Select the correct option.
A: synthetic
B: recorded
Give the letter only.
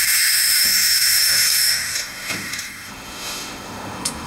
A